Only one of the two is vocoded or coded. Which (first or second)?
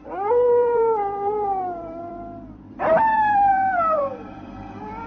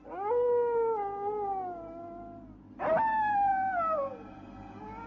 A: first